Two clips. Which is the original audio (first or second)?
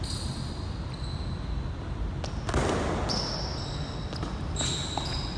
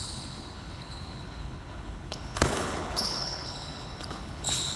first